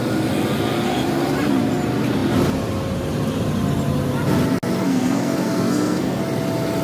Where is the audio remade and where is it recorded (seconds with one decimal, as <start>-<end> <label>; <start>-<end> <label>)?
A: 0.0-4.8 recorded; 4.8-6.2 remade; 6.2-6.8 recorded

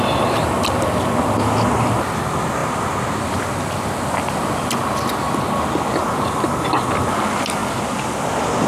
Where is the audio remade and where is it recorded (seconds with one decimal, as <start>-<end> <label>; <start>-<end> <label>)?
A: 0.0-8.7 recorded

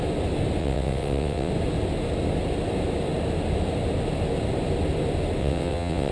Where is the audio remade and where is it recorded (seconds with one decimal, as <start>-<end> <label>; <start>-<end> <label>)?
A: 0.0-0.6 recorded; 0.6-1.5 remade; 1.5-5.4 recorded; 5.4-6.1 remade

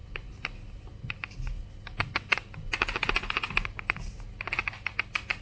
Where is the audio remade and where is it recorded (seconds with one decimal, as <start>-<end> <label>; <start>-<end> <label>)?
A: 0.0-0.9 remade; 0.9-5.4 recorded

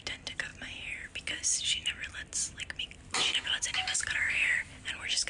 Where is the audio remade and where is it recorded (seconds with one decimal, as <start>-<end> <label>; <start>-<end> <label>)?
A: 0.0-5.3 recorded

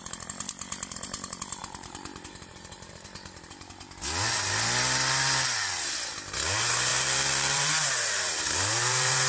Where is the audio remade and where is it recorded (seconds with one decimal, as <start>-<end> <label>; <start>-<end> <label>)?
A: 0.0-1.6 recorded; 1.6-2.9 remade; 2.9-6.9 recorded; 6.9-9.3 remade